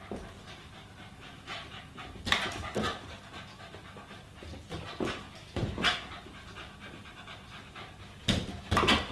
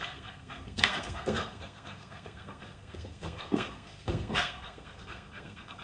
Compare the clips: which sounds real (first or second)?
first